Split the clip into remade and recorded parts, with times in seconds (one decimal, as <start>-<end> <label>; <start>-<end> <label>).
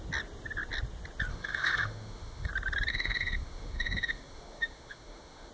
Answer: 0.0-1.3 recorded; 1.3-2.5 remade; 2.5-2.9 recorded; 2.9-5.5 remade